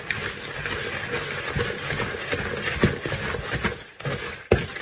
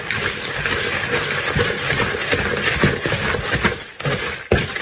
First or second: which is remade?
second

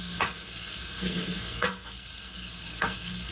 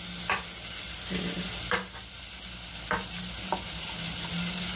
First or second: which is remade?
first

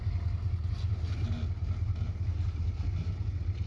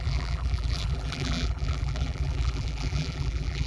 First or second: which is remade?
second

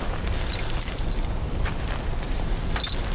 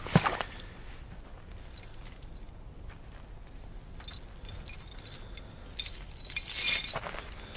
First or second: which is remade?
first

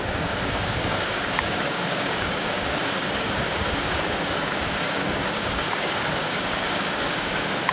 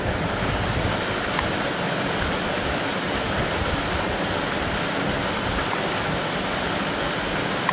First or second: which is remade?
first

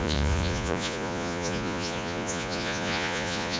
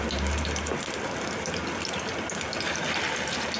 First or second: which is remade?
first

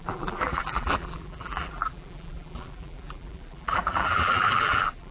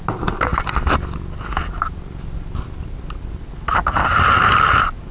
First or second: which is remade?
first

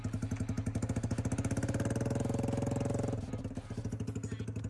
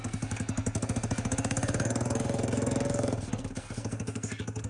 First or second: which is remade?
second